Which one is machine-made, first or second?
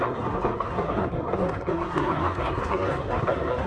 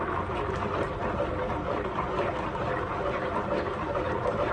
first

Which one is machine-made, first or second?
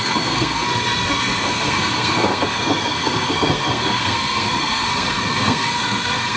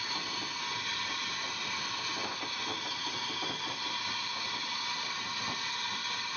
first